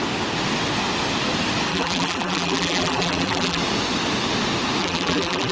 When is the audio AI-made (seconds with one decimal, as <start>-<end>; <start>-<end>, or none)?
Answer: 1.7-3.6; 4.8-5.5